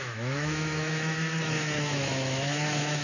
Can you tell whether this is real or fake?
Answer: fake